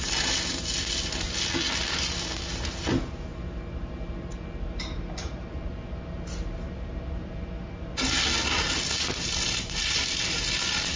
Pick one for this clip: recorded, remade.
recorded